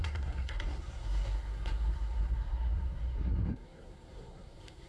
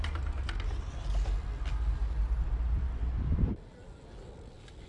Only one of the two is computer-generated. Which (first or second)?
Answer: first